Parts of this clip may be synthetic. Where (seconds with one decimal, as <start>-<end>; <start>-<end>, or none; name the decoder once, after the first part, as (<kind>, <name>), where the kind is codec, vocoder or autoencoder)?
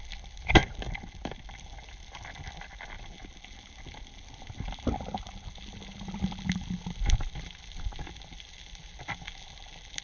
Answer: none